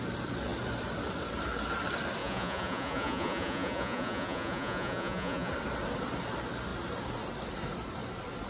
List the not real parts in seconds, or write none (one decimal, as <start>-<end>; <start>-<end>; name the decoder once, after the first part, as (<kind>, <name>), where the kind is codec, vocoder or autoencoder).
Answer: 2.2-5.5 (vocoder, Vocos)